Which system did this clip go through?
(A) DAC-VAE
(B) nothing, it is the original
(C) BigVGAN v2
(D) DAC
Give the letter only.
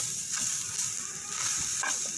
C